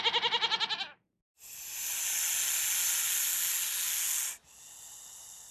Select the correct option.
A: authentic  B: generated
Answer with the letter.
A